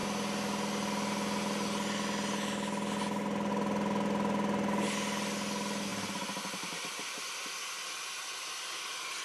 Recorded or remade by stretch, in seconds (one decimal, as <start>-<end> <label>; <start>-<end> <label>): 0.0-9.2 recorded